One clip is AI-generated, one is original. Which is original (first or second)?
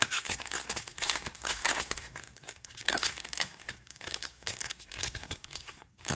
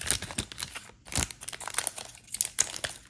second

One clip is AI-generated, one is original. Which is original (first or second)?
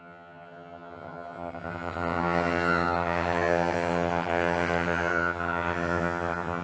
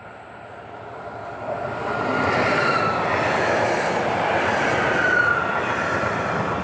second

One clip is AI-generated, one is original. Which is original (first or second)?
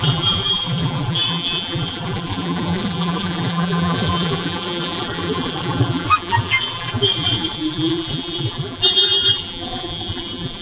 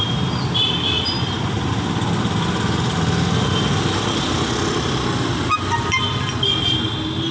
second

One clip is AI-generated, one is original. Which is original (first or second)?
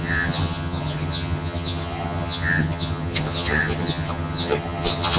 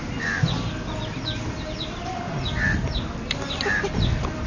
second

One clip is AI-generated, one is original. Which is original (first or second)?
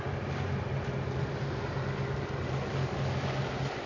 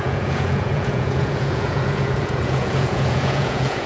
first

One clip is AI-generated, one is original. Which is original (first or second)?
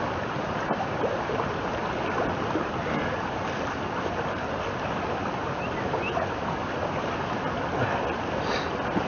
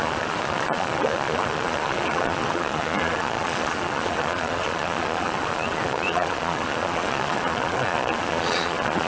first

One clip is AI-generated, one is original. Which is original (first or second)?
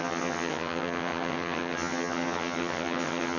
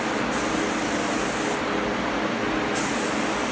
second